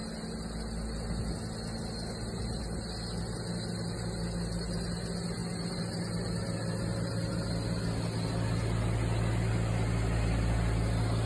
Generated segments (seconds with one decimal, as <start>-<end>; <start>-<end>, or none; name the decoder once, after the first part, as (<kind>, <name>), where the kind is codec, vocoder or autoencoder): none